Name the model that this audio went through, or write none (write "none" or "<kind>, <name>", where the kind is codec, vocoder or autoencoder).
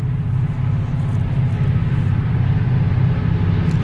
none